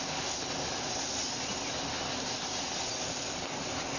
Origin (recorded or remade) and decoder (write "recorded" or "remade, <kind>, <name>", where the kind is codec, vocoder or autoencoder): recorded